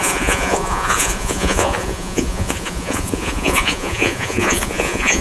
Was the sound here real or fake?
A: fake